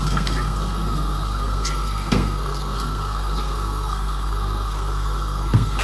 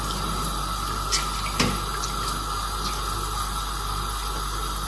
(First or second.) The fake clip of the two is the first